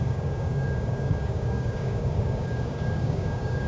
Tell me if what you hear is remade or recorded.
remade